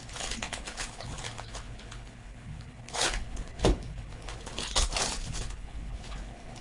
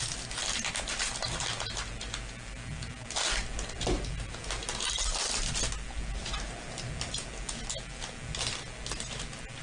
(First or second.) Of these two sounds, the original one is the second